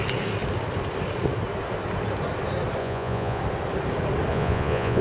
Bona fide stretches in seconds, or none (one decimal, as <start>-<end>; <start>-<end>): 0.0-2.8; 3.4-4.3